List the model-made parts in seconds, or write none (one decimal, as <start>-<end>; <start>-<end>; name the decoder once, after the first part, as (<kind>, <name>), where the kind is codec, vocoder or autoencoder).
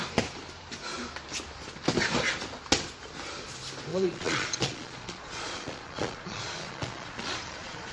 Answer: 3.9-7.9 (vocoder, Vocos)